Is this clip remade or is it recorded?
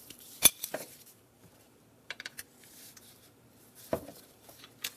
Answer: remade